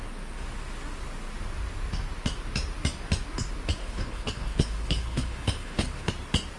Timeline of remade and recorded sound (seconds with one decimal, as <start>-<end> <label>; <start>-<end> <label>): 0.0-3.8 recorded; 3.8-6.1 remade; 6.1-6.6 recorded